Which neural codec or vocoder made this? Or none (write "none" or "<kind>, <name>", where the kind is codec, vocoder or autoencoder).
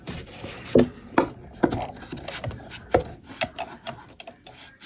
none